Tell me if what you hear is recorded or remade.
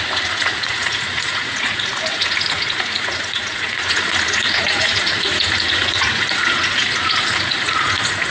remade